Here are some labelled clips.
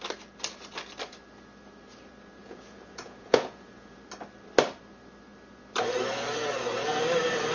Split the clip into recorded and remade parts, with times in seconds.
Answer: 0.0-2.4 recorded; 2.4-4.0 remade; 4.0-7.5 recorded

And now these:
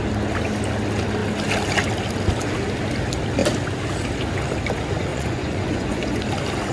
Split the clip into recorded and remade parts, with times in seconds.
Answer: 0.0-5.1 recorded; 5.1-6.2 remade; 6.2-6.7 recorded

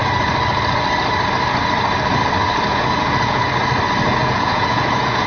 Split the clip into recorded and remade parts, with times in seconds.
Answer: 0.0-2.7 recorded; 2.7-3.4 remade; 3.4-4.2 recorded; 4.2-5.3 remade

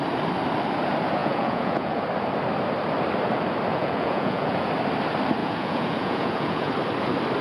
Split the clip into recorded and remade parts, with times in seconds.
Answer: 0.0-1.2 recorded; 1.2-2.0 remade; 2.0-3.7 recorded; 3.7-4.7 remade; 4.7-5.4 recorded; 5.4-6.7 remade; 6.7-7.4 recorded

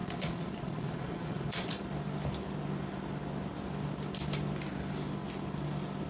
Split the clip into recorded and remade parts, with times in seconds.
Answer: 0.0-1.8 remade; 1.8-6.1 recorded